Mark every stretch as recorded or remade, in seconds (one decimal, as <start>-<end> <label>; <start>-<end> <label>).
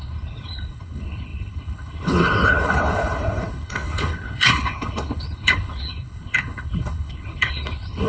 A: 0.0-8.1 remade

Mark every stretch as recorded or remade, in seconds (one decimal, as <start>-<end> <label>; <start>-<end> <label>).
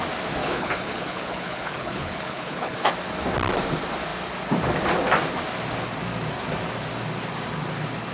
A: 0.0-0.4 recorded; 0.4-2.9 remade; 2.9-8.1 recorded